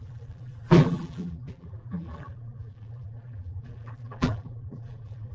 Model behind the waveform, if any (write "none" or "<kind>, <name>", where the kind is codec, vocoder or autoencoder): vocoder, BigVGAN v2